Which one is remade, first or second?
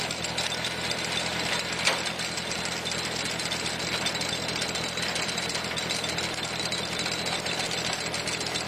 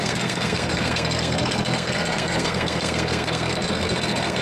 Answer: second